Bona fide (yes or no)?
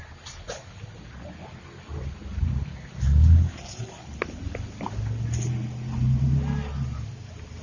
yes